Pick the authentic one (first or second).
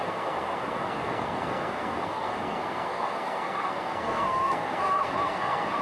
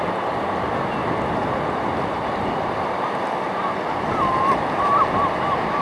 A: second